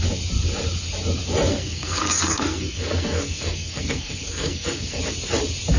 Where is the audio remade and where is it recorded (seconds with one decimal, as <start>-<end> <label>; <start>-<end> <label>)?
0.0-1.5 recorded; 1.5-5.0 remade; 5.0-5.8 recorded